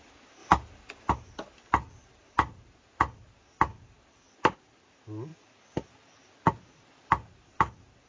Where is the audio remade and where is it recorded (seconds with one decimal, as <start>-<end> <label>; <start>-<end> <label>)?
0.0-8.1 recorded